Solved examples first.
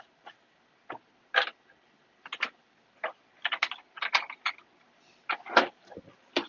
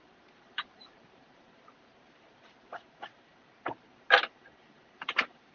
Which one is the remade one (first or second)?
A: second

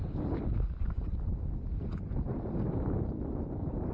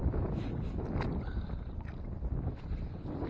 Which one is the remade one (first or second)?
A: second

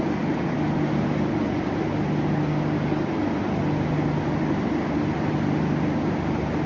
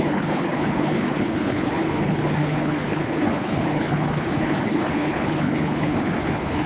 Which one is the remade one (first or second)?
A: second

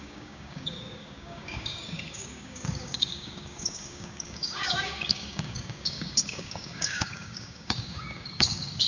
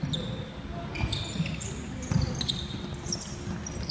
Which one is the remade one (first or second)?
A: first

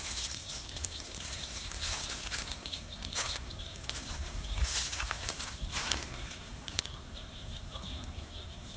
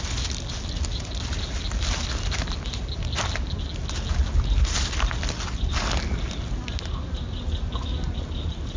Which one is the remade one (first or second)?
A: first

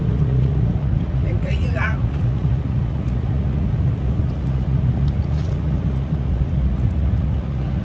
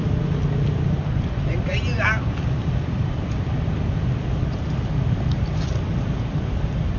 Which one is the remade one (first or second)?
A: first